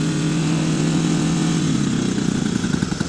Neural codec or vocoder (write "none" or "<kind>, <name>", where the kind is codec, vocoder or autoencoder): vocoder, Vocos